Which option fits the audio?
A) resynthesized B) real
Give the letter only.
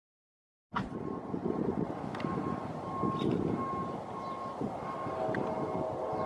B